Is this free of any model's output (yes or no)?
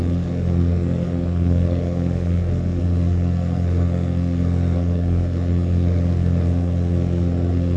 no